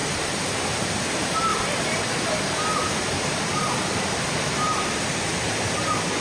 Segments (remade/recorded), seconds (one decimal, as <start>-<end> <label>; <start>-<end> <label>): 0.0-1.1 recorded; 1.1-1.5 remade; 1.5-4.2 recorded; 4.2-6.2 remade